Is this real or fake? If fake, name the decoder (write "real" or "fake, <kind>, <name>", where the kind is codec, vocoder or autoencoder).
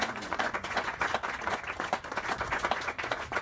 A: fake, vocoder, Vocos